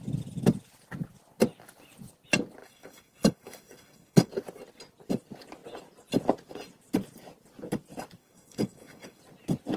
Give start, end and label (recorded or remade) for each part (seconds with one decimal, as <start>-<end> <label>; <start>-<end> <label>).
0.0-2.6 recorded; 2.6-4.3 remade; 4.3-8.2 recorded; 8.2-9.2 remade; 9.2-9.8 recorded